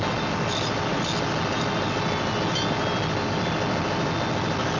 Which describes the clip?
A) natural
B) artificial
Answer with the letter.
A